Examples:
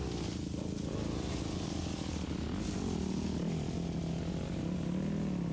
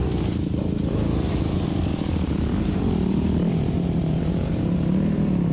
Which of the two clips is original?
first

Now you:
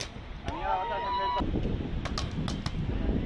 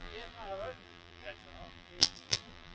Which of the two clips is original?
first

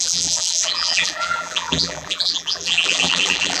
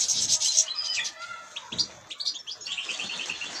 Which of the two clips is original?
second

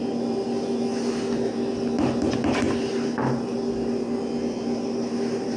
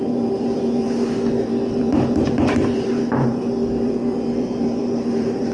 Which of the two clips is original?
first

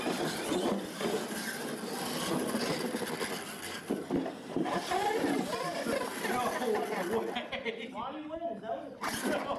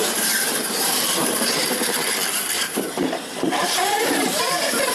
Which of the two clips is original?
first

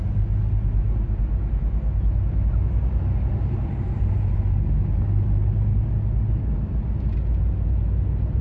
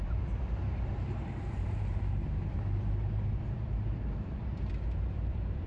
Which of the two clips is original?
first